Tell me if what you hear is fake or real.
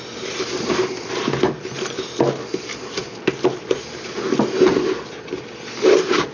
real